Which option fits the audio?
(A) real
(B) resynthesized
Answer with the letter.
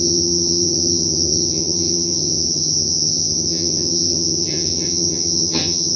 B